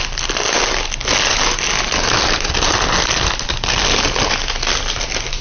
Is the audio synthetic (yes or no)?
no